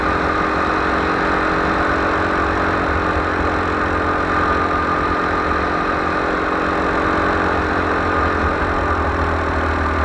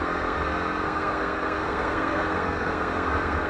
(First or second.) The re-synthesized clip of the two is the second